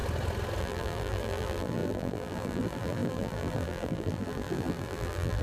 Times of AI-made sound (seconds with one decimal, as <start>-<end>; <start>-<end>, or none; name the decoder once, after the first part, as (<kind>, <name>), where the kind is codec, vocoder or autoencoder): 0.6-5.4 (vocoder, BigVGAN v2)